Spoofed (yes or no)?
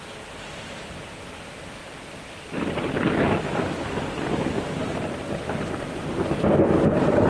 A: no